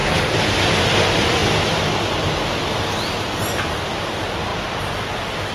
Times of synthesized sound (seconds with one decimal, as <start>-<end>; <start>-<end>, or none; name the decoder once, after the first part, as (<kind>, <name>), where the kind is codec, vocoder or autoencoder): none